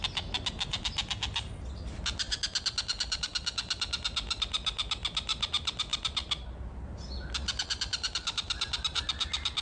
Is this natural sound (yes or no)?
yes